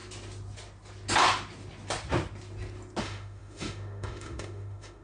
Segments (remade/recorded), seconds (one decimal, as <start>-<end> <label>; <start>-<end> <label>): 0.0-3.0 recorded; 3.0-5.0 remade